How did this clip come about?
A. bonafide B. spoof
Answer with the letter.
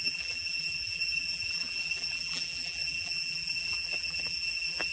B